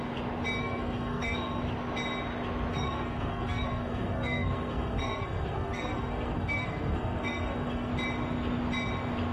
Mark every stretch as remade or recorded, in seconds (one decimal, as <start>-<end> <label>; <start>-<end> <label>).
0.0-0.6 recorded; 0.6-1.6 remade; 1.6-2.7 recorded; 2.7-7.9 remade; 7.9-9.3 recorded